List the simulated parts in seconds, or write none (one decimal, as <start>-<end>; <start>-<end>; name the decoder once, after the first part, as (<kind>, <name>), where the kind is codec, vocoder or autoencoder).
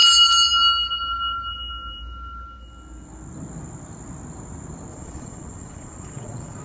4.9-6.6 (vocoder, Vocos)